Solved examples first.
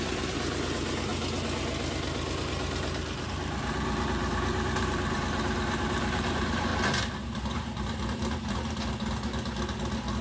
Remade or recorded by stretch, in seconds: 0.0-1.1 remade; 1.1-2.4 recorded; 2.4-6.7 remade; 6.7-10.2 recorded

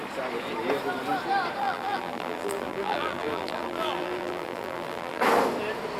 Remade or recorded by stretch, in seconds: 0.0-1.6 recorded; 1.6-5.2 remade; 5.2-6.0 recorded

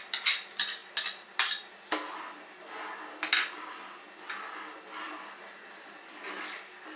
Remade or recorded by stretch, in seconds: 0.0-7.0 recorded

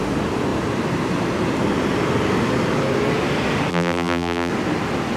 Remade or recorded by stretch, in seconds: 0.0-3.7 recorded; 3.7-4.5 remade; 4.5-5.2 recorded

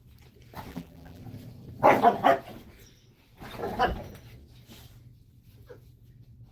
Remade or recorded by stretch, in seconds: 0.0-0.7 recorded; 0.7-1.2 remade; 1.2-6.5 recorded